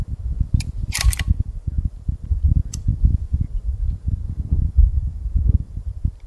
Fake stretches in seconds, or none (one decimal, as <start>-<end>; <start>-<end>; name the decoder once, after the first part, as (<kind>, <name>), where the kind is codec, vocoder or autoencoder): 0.0-6.3 (vocoder, BigVGAN v2)